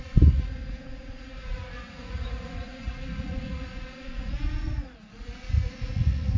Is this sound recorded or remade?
remade